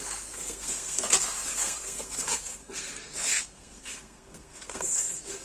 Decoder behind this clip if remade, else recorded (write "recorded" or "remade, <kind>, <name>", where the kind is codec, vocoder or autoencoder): remade, codec, SNAC